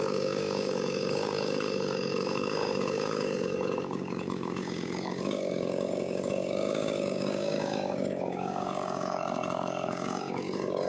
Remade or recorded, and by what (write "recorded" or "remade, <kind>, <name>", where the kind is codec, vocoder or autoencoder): remade, codec, DAC